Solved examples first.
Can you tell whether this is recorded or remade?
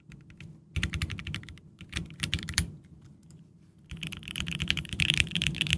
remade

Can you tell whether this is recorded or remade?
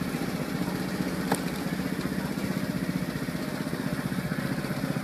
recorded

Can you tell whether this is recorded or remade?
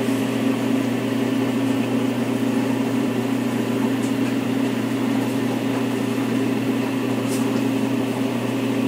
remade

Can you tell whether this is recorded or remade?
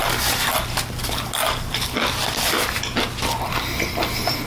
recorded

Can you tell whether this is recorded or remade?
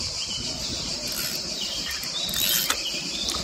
recorded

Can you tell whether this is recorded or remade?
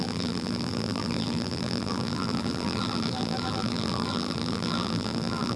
remade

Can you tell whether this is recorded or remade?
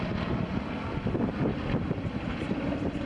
remade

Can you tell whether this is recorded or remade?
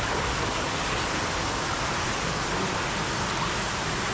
recorded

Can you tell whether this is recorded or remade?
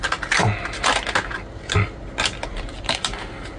recorded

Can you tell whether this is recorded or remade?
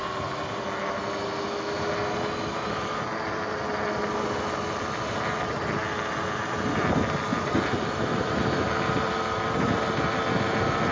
recorded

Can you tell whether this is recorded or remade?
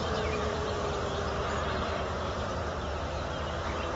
remade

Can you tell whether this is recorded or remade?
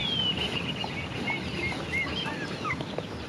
recorded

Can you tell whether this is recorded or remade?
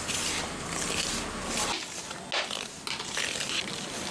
recorded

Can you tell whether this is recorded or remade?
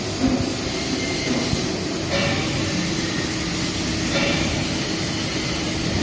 recorded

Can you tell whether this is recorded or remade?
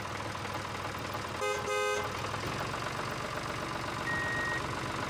recorded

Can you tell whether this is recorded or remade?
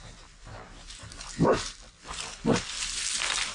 remade